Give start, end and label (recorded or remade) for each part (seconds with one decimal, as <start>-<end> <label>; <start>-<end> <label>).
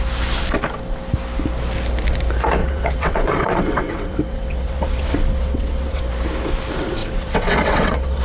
0.0-2.6 recorded; 2.6-6.0 remade; 6.0-7.0 recorded; 7.0-8.2 remade